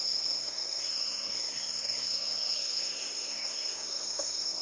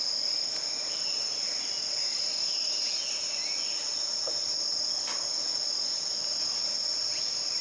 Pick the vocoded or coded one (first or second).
first